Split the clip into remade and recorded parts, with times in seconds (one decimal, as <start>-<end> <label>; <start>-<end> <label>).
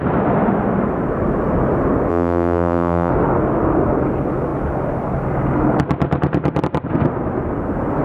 0.0-2.1 recorded; 2.1-3.1 remade; 3.1-8.0 recorded